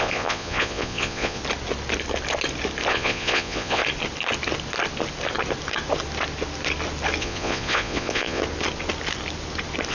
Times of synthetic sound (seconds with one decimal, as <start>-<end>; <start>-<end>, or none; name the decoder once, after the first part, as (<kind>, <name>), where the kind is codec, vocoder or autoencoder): 0.0-1.4 (vocoder, Vocos); 2.9-3.8; 7.2-8.4